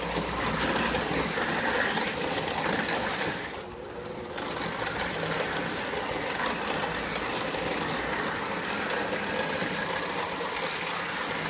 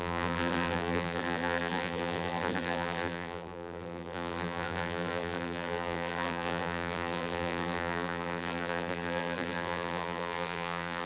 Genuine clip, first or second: first